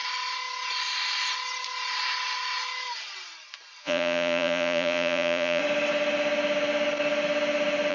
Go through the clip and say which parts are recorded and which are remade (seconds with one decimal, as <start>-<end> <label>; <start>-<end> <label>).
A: 0.0-3.8 recorded; 3.8-5.6 remade; 5.6-7.9 recorded